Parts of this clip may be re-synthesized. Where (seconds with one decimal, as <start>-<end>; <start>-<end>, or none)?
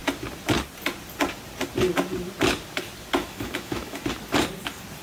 3.2-4.0